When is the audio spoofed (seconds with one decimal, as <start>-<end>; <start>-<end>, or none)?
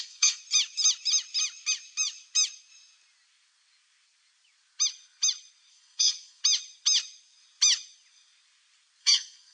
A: 0.0-0.4; 5.7-6.4; 9.0-9.5